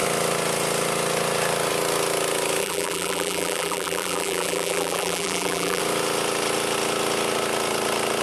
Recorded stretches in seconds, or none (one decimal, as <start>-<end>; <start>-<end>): 0.0-2.6; 5.8-8.2